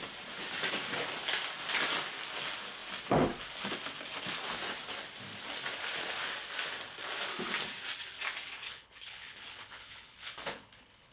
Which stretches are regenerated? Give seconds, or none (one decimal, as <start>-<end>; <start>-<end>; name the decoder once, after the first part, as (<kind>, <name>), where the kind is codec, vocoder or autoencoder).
8.6-11.1 (codec, HILCodec)